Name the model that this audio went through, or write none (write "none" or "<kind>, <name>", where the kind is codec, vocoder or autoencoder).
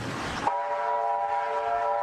none